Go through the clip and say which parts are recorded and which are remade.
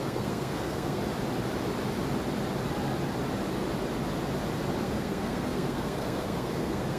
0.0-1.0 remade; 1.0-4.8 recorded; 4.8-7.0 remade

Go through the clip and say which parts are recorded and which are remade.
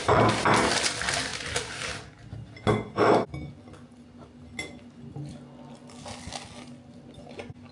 0.0-7.7 recorded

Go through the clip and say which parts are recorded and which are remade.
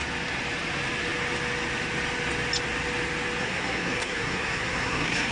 0.0-3.4 recorded; 3.4-5.3 remade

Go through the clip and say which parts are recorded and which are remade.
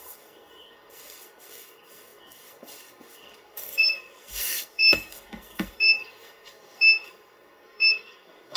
0.0-8.6 remade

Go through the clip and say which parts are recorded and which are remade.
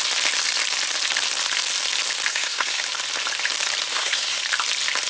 0.0-2.3 recorded; 2.3-2.8 remade; 2.8-3.9 recorded; 3.9-4.4 remade; 4.4-5.1 recorded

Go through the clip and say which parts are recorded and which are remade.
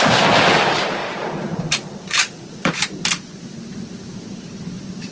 0.0-1.0 recorded; 1.0-2.8 remade; 2.8-5.1 recorded